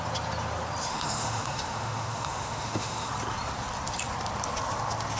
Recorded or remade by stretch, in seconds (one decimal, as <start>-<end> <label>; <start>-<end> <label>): 0.0-0.9 recorded; 0.9-3.1 remade; 3.1-5.2 recorded